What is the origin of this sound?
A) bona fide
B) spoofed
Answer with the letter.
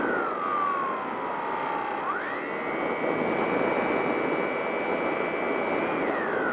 A